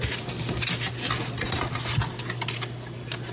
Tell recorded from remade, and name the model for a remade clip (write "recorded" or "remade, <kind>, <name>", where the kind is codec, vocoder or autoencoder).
recorded